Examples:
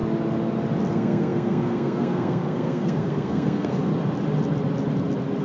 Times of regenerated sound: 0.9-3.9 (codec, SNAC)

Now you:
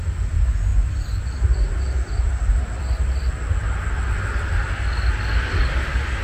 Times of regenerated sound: none